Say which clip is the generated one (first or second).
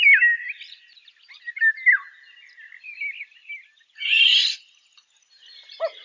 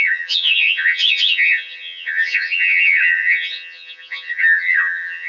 second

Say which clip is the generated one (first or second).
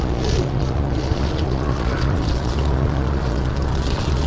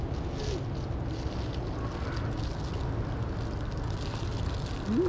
first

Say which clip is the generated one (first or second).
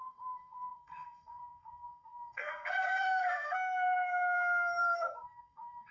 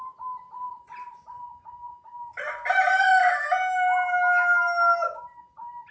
first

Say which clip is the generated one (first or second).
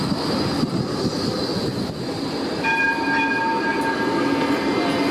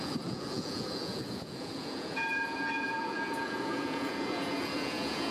second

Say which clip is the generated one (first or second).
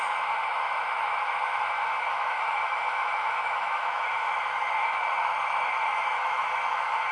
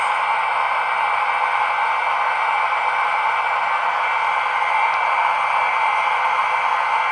first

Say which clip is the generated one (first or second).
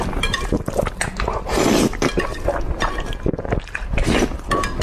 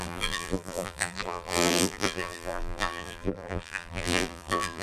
second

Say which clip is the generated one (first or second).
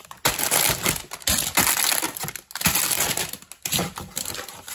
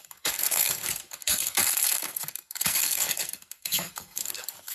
second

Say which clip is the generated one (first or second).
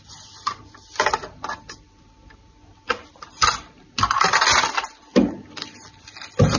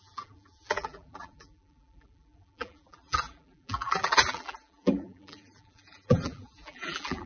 second